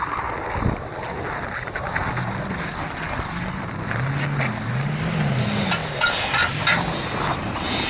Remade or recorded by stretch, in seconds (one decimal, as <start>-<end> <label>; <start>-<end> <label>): 0.0-7.9 recorded